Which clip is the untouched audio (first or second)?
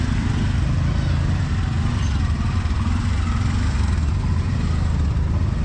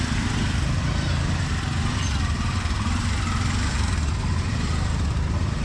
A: first